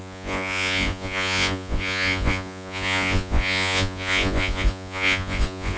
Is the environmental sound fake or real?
fake